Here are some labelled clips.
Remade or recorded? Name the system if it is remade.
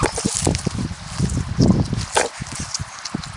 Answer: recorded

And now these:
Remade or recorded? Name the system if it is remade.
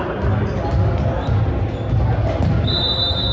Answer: recorded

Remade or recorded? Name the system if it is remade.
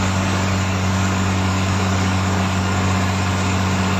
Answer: remade, codec, DAC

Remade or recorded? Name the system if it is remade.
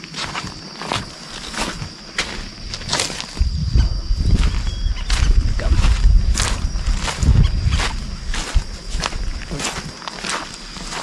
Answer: recorded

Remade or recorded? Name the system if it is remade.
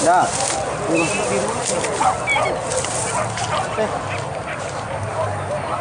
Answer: recorded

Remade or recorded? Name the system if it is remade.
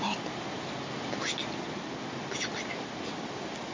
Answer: recorded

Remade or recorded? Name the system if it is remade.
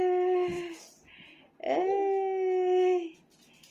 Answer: recorded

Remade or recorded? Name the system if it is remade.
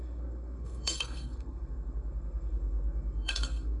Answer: remade, codec, SNAC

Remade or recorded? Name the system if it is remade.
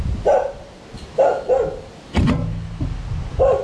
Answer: recorded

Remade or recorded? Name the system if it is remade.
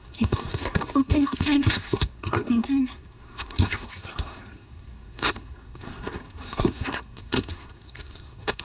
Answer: remade, codec, SNAC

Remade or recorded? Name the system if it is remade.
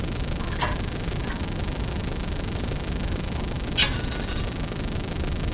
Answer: recorded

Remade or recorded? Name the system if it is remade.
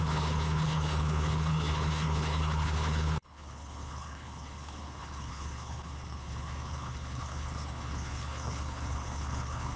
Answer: remade, codec, HILCodec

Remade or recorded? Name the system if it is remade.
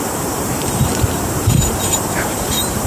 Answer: remade, vocoder, BigVGAN v2